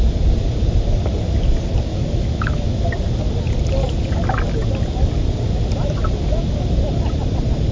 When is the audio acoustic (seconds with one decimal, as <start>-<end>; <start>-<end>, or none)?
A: 0.0-1.9; 2.8-7.7